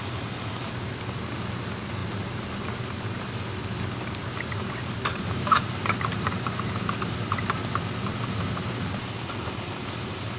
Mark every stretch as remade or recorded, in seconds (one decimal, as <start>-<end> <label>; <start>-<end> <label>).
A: 0.0-2.0 recorded; 2.0-3.3 remade; 3.3-4.2 recorded; 4.2-7.7 remade; 7.7-10.4 recorded